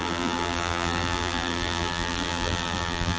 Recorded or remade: remade